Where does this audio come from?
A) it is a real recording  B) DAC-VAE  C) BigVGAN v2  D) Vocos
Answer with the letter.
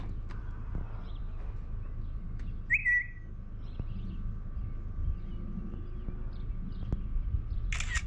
A